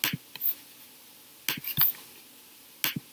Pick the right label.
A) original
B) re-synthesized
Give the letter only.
A